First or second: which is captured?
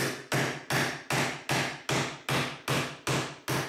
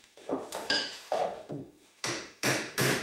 first